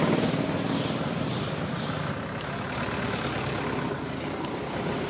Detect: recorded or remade recorded